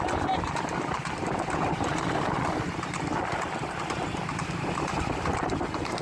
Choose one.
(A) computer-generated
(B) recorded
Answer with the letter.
B